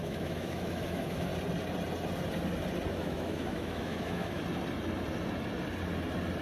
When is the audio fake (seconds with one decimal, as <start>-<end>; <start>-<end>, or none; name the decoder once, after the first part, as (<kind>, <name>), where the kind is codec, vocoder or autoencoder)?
0.0-1.3 (autoencoder, DAC-VAE); 2.9-4.4